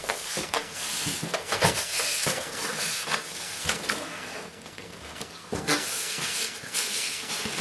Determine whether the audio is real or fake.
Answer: fake